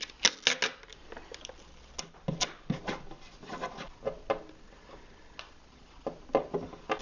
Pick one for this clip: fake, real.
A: real